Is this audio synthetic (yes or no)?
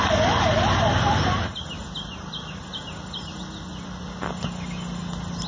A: no